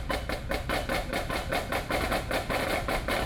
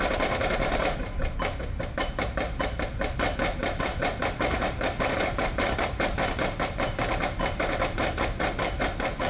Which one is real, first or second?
first